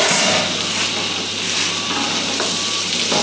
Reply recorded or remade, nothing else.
recorded